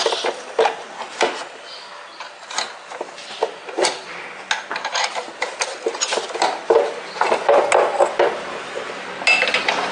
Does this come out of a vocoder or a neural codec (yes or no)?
no